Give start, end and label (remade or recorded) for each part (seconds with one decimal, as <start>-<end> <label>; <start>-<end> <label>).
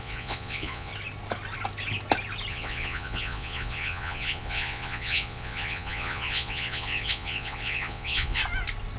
0.0-0.9 remade; 0.9-2.5 recorded; 2.5-8.4 remade; 8.4-9.0 recorded